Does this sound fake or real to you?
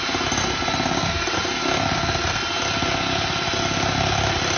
real